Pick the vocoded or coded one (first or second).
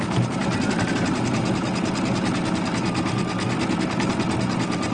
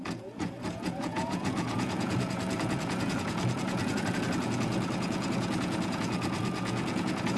second